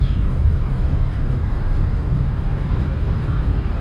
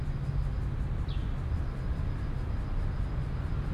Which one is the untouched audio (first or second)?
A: second